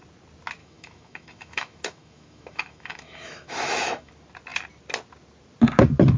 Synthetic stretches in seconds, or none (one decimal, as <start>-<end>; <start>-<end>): 0.6-4.1